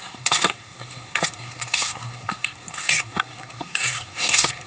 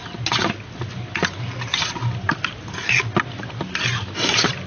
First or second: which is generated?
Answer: first